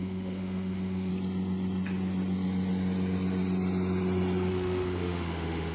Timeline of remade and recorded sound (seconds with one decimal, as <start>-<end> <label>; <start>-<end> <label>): 0.0-1.1 remade; 1.1-4.5 recorded; 4.5-5.7 remade